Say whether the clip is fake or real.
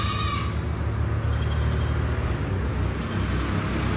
real